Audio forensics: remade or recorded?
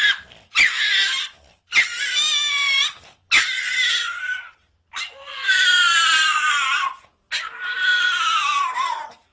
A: recorded